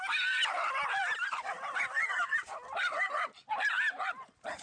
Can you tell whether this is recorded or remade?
recorded